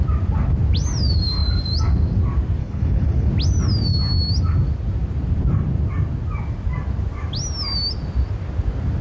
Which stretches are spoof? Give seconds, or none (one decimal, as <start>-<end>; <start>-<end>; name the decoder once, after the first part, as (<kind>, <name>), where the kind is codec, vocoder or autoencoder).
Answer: 2.6-3.3 (codec, HILCodec)